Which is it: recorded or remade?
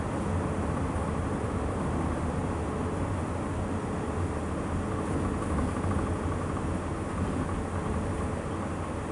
recorded